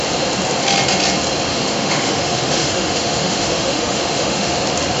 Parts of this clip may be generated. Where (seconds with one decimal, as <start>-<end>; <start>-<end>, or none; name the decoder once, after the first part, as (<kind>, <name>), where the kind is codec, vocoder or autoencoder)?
1.5-4.5 (autoencoder, DAC-VAE)